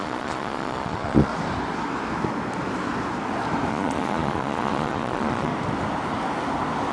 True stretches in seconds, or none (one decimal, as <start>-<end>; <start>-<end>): 1.3-3.7; 5.5-6.9